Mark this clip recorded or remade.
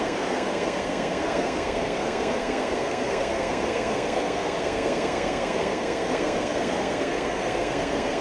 remade